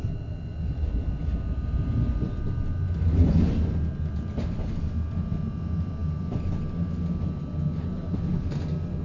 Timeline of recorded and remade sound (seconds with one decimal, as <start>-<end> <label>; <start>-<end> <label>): 0.0-9.0 recorded